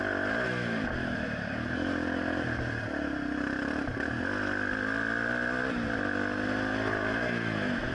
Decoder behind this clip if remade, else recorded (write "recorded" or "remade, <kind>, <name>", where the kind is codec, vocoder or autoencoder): recorded